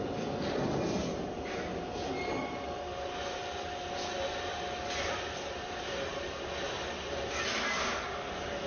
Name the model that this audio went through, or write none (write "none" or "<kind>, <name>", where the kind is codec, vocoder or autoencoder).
none